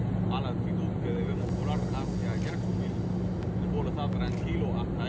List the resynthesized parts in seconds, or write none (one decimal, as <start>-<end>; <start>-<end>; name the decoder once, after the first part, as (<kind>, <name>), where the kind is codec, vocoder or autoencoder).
none